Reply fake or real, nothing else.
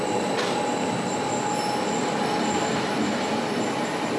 real